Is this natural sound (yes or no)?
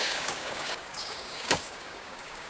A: no